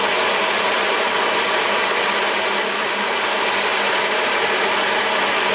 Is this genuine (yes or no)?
yes